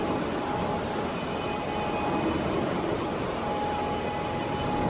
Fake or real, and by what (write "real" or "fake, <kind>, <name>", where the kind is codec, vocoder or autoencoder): real